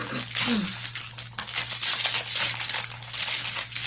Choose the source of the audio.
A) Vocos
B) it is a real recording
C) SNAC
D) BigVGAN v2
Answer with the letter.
B